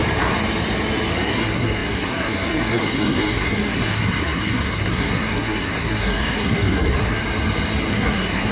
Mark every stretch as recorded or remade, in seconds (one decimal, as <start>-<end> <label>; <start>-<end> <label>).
0.0-1.1 recorded; 1.1-7.2 remade; 7.2-7.9 recorded; 7.9-8.5 remade